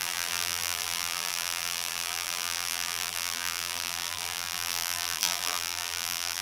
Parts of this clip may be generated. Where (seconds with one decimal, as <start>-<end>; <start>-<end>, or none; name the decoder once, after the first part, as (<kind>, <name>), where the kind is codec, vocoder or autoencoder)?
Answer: 0.0-6.4 (vocoder, BigVGAN v2)